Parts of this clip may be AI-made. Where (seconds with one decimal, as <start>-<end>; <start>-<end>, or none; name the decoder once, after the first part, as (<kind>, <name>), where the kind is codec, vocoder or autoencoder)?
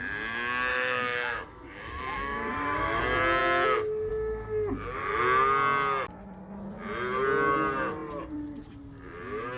0.7-3.0 (autoencoder, DAC-VAE)